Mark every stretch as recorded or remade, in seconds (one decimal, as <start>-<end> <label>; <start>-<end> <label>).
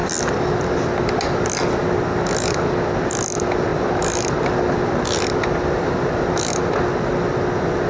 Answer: 0.0-7.9 recorded